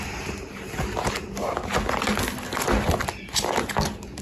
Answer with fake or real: real